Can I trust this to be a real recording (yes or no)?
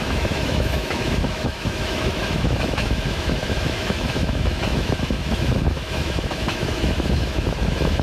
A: no